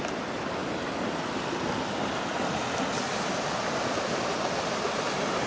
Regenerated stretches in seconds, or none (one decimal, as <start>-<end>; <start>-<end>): none